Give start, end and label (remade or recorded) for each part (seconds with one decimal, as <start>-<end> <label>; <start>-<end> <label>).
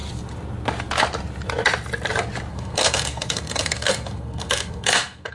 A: 0.0-2.5 recorded; 2.5-5.3 remade